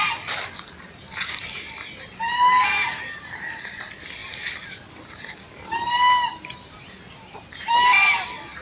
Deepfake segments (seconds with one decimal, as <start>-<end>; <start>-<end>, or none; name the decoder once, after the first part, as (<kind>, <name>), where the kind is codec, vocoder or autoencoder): none

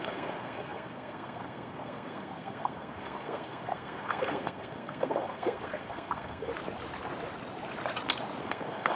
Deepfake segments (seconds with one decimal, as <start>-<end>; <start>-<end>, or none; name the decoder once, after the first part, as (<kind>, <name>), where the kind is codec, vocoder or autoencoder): 0.0-6.5 (codec, SNAC); 8.4-9.0

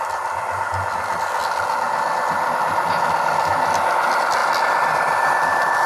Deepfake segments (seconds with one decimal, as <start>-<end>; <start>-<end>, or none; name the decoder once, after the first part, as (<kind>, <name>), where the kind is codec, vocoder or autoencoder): none